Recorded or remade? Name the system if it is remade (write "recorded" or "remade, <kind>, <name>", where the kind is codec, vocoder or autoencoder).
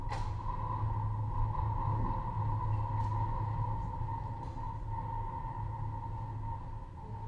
recorded